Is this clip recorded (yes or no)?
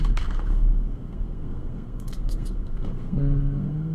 no